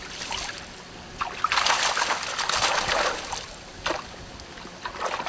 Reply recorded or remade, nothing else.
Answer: recorded